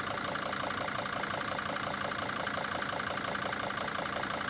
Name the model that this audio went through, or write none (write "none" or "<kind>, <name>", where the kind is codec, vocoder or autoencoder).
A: none